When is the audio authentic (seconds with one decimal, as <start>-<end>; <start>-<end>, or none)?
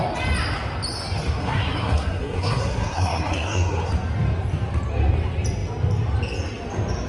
0.0-1.4; 3.9-7.1